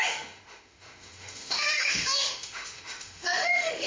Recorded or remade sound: remade